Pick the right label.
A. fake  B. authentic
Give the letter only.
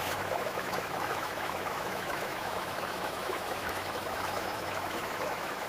A